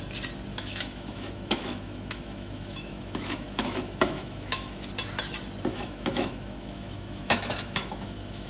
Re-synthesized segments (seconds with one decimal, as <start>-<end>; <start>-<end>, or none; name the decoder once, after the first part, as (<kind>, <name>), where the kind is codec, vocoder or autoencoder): 0.5-4.9 (autoencoder, DAC-VAE); 5.7-8.5